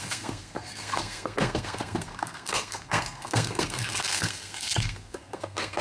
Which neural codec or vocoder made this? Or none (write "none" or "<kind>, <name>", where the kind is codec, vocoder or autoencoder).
codec, SNAC